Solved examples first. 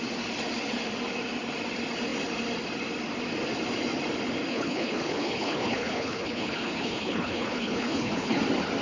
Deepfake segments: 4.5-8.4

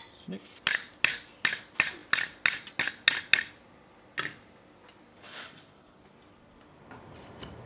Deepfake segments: 5.1-6.0